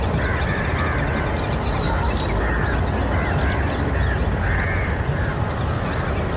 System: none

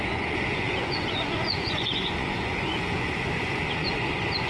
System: vocoder, Vocos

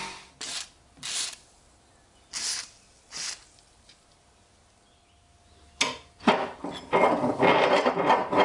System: none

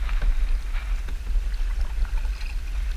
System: none